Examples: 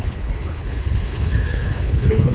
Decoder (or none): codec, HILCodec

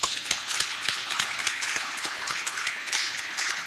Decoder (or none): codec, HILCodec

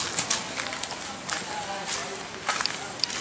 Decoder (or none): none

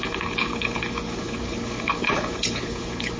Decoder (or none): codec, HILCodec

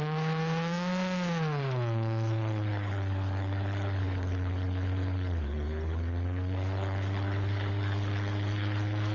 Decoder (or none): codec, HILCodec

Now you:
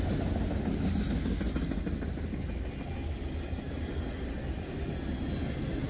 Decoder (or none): none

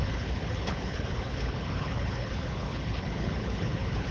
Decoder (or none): codec, HILCodec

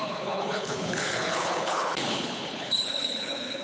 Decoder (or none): codec, HILCodec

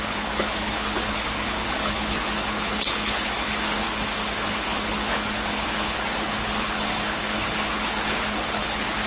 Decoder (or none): codec, HILCodec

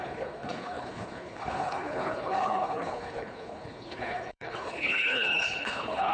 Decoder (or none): codec, HILCodec